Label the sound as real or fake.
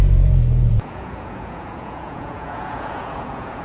fake